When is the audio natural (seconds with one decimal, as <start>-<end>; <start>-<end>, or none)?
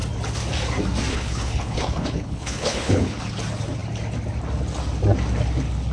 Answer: 0.0-1.1; 3.2-5.9